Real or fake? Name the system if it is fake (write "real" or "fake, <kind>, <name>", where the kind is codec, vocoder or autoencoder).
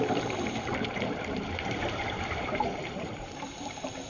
fake, vocoder, BigVGAN v2